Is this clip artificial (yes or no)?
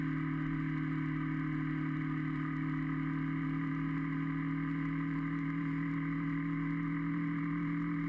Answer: yes